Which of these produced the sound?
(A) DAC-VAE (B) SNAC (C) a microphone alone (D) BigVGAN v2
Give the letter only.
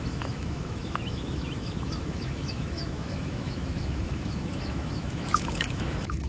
A